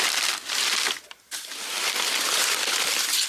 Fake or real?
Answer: real